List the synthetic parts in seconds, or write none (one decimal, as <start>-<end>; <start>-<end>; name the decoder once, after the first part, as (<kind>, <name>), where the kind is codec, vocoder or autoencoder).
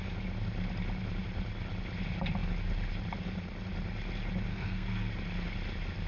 4.5-5.1 (codec, SNAC)